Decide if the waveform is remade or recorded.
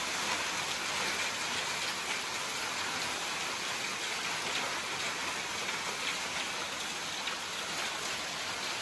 recorded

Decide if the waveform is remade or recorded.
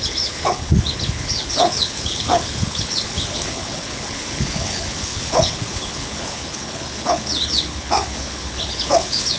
remade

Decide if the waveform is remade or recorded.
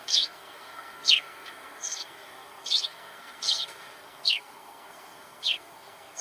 remade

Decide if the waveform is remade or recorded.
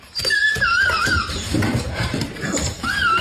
remade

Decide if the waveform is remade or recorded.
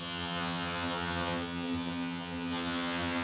remade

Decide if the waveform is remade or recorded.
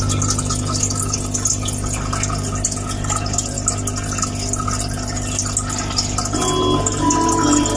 recorded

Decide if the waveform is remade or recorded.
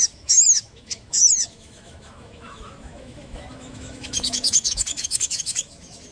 remade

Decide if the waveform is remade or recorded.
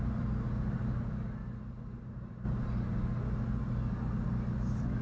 recorded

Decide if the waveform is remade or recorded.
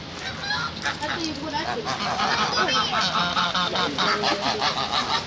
recorded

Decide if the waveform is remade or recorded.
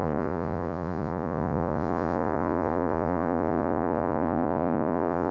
remade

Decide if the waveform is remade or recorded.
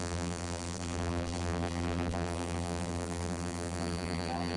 remade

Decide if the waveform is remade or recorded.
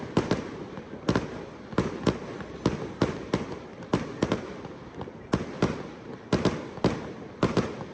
recorded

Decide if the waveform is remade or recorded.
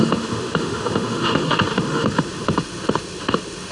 remade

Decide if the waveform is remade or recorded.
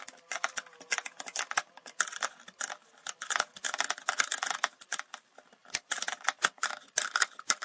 recorded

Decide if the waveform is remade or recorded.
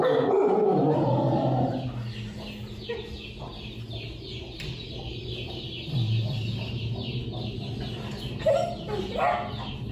recorded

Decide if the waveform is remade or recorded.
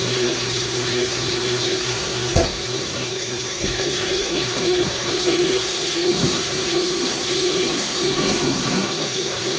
remade